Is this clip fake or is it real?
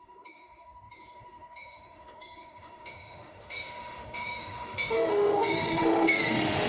fake